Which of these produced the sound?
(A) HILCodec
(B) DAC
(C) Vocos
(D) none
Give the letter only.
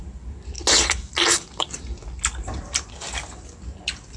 D